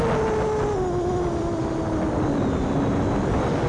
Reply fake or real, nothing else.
real